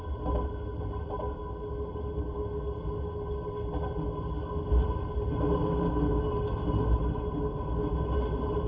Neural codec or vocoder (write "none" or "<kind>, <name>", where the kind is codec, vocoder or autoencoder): none